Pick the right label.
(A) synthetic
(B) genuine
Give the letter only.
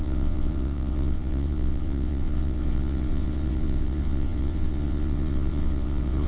A